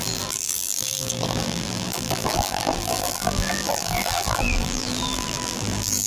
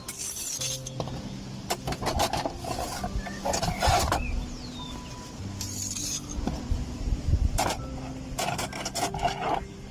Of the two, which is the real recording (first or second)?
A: second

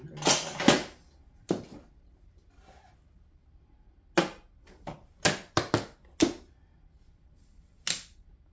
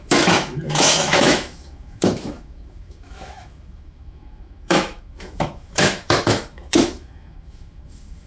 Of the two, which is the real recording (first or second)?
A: first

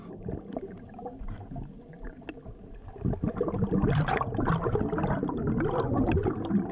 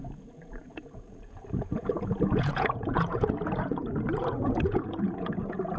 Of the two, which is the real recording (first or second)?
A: first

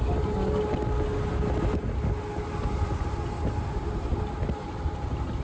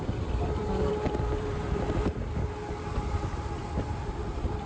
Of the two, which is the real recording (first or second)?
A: first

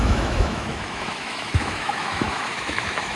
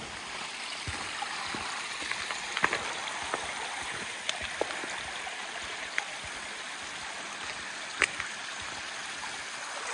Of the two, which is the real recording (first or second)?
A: second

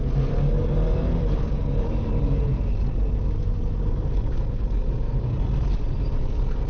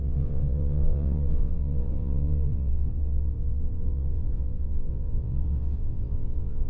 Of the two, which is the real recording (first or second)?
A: first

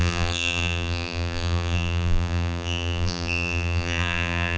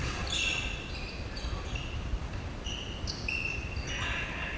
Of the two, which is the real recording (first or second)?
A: second